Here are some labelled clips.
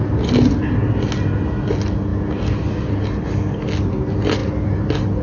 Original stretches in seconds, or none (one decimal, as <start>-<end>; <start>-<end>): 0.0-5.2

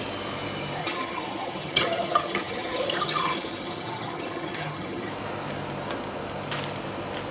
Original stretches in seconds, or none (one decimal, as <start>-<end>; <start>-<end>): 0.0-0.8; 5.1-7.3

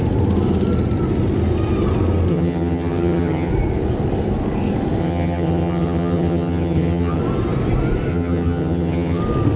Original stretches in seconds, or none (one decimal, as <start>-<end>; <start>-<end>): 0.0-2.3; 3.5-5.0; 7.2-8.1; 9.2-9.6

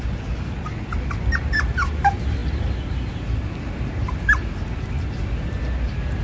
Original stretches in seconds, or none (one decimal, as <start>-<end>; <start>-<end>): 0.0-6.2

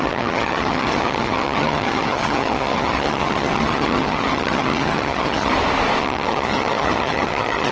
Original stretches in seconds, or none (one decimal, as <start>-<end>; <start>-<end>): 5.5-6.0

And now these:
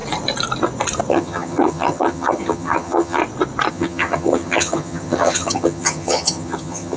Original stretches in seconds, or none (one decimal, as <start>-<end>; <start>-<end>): 0.0-1.1; 3.2-3.7